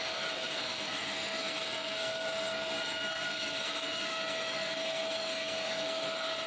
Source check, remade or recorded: remade